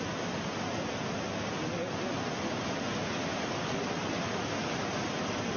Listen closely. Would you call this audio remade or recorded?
recorded